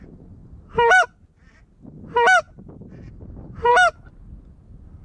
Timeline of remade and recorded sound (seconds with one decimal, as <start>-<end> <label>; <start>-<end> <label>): 0.0-5.0 recorded